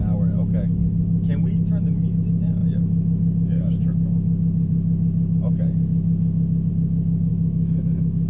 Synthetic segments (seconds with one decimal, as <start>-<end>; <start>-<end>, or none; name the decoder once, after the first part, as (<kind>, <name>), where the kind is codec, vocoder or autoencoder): 7.3-8.3 (autoencoder, DAC-VAE)